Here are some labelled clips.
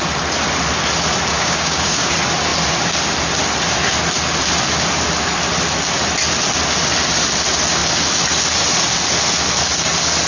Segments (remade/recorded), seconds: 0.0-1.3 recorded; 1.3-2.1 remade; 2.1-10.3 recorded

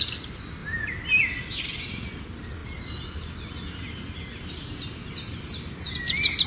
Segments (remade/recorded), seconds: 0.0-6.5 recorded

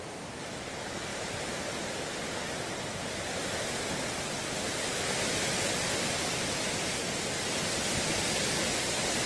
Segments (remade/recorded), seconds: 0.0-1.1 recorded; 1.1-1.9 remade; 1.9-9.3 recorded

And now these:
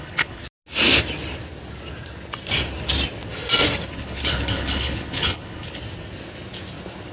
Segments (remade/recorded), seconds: 0.0-0.4 remade; 0.4-3.9 recorded; 3.9-5.8 remade; 5.8-7.1 recorded